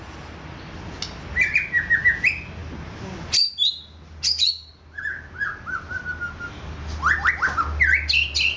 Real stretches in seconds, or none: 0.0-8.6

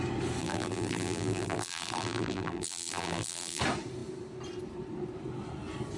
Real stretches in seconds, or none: 0.0-0.4; 3.6-6.0

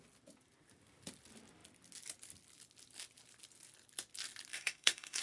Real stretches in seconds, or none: 0.0-4.5

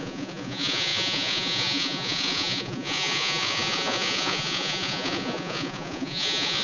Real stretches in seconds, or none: none

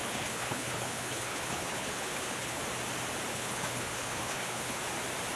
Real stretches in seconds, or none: 2.6-3.3; 4.8-5.4

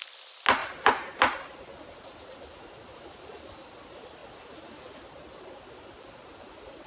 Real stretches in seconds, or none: 0.0-6.9

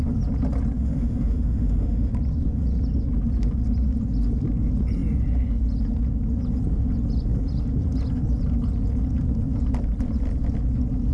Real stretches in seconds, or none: 0.0-0.8; 2.1-11.1